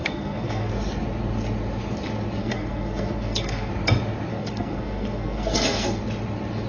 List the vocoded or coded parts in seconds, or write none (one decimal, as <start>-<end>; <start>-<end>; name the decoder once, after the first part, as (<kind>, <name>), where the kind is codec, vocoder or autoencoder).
0.0-0.7 (codec, SNAC); 2.4-3.7; 4.3-6.0